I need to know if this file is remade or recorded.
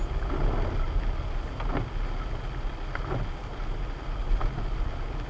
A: recorded